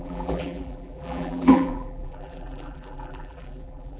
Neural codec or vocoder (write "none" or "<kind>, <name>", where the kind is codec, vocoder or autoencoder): vocoder, BigVGAN v2